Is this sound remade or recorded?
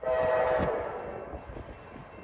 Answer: recorded